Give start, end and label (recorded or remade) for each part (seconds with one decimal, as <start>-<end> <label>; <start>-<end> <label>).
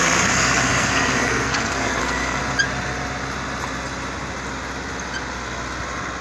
0.0-2.4 remade; 2.4-6.2 recorded